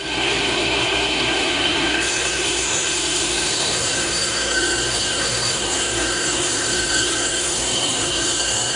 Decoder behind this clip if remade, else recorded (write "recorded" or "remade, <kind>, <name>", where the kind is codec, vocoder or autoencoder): remade, codec, SNAC